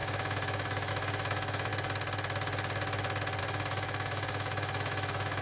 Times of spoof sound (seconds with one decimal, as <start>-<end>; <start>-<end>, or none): 0.0-1.7; 3.4-5.4